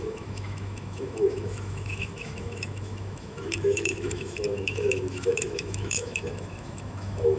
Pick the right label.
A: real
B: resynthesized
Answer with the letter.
B